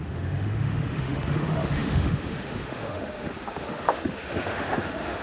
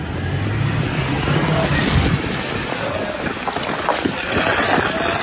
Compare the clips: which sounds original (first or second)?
second